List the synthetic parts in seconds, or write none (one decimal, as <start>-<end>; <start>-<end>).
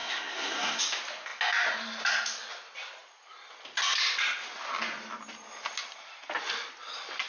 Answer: 0.0-0.8